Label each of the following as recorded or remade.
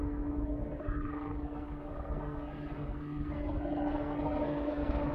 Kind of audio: remade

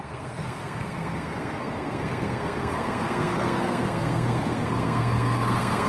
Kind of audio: remade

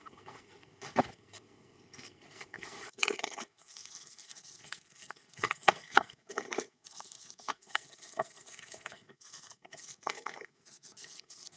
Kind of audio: remade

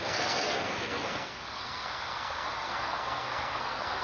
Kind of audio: remade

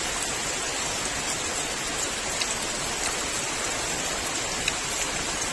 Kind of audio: recorded